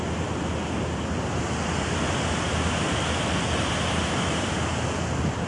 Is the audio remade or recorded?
recorded